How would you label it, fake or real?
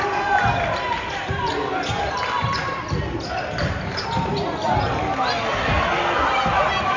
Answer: real